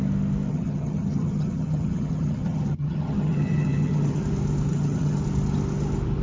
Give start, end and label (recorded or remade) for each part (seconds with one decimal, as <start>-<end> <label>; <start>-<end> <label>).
0.0-0.5 recorded; 0.5-4.2 remade; 4.2-4.7 recorded; 4.7-5.2 remade; 5.2-6.2 recorded